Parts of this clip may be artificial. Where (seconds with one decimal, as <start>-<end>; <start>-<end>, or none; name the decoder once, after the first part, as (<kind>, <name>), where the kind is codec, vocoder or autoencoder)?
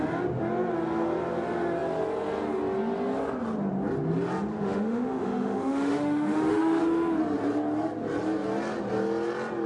4.5-6.8 (autoencoder, DAC-VAE)